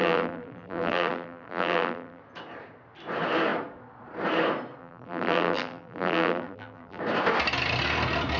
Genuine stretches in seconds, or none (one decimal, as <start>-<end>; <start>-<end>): 2.2-4.8; 7.0-8.4